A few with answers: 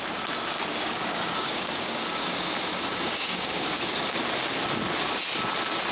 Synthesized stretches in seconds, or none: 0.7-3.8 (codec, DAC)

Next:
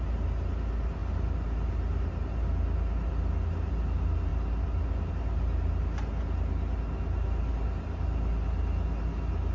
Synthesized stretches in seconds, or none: none

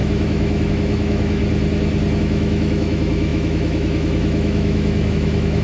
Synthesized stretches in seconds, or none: 0.0-1.4 (autoencoder, DAC-VAE); 2.2-5.6

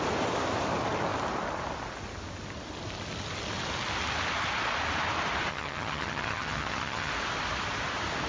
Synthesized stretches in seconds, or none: 5.5-7.1 (vocoder, HiFi-GAN)

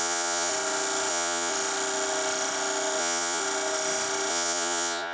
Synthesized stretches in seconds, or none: 0.0-0.5 (vocoder, Vocos); 1.1-1.5; 3.0-3.4; 4.3-5.1

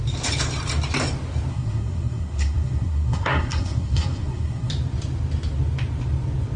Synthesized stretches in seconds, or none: 1.5-4.7 (codec, SNAC)

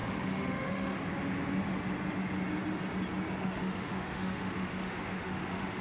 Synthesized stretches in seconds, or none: 0.0-1.1 (autoencoder, DAC-VAE); 3.4-5.8